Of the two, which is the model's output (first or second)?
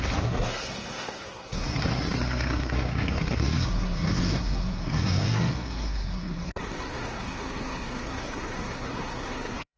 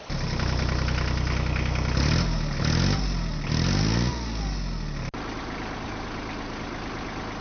first